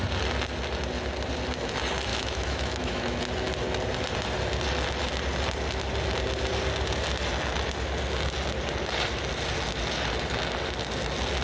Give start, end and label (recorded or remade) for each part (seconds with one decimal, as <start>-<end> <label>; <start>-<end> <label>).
0.0-2.1 recorded; 2.1-3.2 remade; 3.2-11.4 recorded